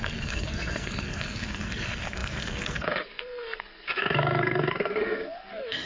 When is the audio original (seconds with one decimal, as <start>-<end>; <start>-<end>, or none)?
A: none